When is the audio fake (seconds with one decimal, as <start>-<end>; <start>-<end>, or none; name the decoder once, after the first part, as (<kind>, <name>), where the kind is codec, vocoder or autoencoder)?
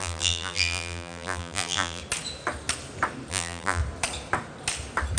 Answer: 0.0-2.0 (vocoder, BigVGAN v2); 3.3-3.8